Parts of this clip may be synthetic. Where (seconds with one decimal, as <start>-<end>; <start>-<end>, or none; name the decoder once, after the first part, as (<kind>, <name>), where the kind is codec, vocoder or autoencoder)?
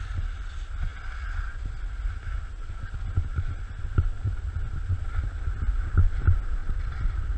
6.6-7.4 (vocoder, BigVGAN v2)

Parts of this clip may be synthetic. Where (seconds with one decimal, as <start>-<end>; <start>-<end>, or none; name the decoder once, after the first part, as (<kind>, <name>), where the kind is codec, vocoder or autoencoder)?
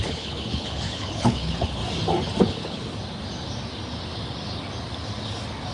0.0-1.8 (codec, HILCodec); 2.4-2.8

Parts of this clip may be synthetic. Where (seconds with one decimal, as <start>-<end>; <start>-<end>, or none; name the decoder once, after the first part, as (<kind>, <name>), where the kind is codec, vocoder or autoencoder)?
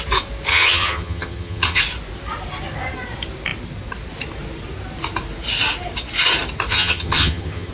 0.5-1.8 (vocoder, HiFi-GAN); 6.7-7.7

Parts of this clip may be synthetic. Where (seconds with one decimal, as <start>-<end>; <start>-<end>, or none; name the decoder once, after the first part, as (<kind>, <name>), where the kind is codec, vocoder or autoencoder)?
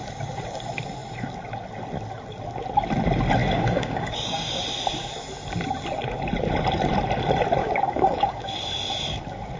3.4-4.6 (codec, DAC); 7.6-8.6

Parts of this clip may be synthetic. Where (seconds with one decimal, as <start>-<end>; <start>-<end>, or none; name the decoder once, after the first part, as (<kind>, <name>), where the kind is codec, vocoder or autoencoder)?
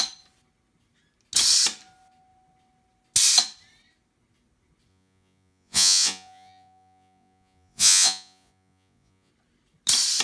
4.9-9.3 (vocoder, Vocos)